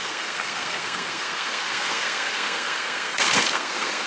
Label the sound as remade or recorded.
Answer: remade